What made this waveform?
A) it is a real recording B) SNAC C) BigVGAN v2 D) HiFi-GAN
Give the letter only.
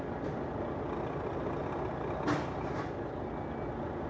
A